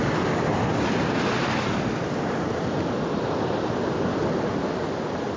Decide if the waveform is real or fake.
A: real